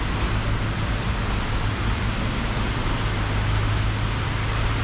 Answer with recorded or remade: recorded